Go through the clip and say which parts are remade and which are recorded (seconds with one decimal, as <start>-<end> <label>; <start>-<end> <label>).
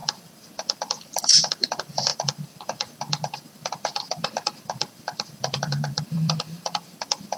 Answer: 0.0-7.4 remade